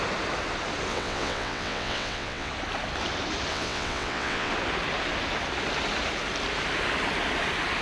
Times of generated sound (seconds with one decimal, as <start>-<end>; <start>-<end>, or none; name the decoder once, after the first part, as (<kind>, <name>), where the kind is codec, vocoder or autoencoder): 0.9-2.5 (vocoder, WaveNeXt); 3.5-4.5